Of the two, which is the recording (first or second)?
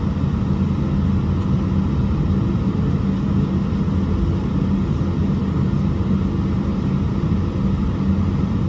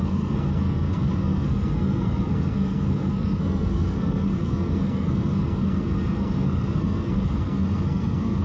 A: first